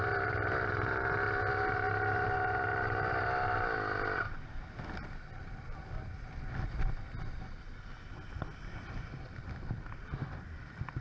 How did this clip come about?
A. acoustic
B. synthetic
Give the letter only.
A